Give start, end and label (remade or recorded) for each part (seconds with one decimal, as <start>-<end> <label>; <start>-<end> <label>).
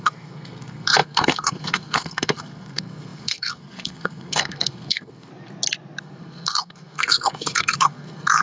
0.0-5.3 remade; 5.3-6.0 recorded; 6.0-8.4 remade